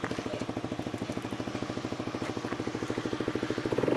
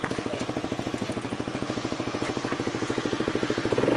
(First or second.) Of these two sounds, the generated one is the second